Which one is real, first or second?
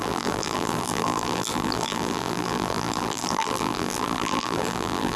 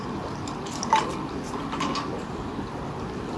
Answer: second